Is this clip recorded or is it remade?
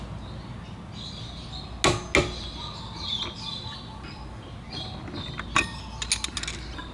recorded